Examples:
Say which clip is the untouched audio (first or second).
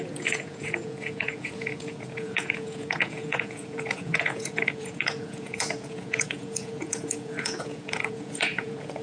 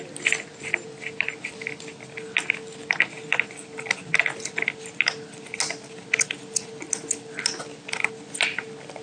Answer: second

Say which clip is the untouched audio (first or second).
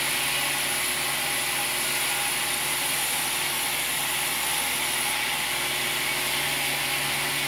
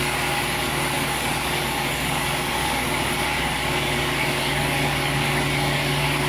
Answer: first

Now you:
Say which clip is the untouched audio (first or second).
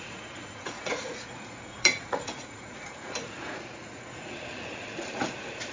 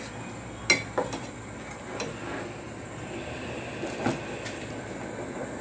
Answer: second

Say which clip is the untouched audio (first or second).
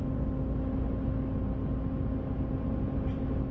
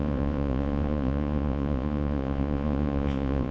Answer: first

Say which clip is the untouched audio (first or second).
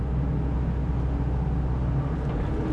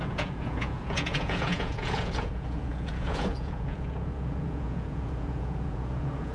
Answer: first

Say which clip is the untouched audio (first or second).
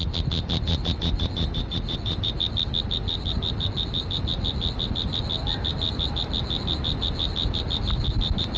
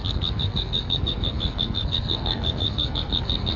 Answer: first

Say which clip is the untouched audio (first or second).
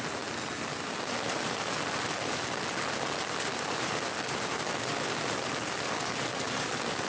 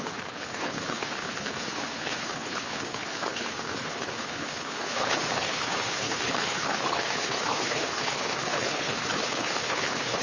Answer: first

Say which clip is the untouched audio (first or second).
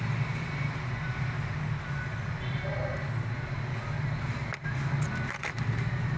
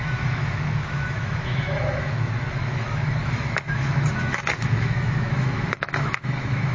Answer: first